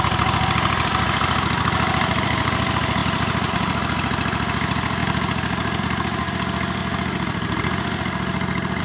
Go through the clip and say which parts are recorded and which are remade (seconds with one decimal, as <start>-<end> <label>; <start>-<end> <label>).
0.0-5.0 remade; 5.0-5.8 recorded; 5.8-6.8 remade; 6.8-8.8 recorded